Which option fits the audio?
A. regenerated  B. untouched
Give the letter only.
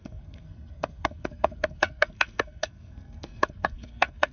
A